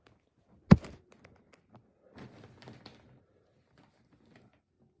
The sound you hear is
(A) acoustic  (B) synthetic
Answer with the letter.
A